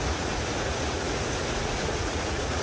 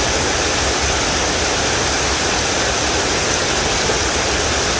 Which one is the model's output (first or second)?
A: first